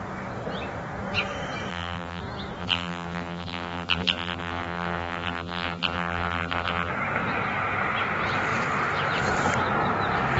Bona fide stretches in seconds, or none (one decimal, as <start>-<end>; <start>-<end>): 0.0-1.7; 2.2-2.6; 6.9-10.4